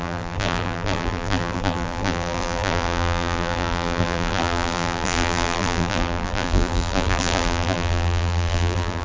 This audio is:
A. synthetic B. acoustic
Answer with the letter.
A